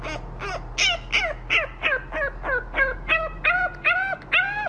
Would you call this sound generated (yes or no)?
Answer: no